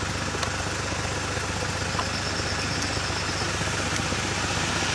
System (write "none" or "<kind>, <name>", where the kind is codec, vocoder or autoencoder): none